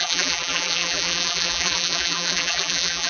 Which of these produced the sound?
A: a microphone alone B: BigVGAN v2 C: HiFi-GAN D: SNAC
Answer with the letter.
B